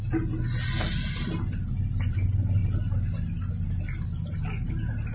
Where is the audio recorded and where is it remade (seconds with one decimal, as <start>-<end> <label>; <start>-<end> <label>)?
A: 0.0-5.1 recorded